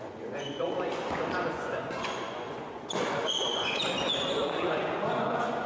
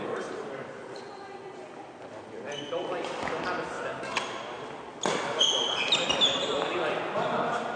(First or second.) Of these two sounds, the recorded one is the second